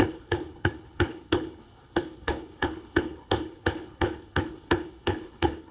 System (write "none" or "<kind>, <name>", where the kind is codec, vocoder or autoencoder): codec, HILCodec